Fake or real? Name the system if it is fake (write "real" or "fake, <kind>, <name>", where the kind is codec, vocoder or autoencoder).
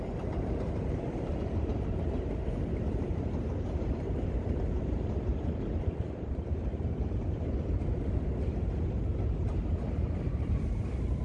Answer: fake, vocoder, BigVGAN v2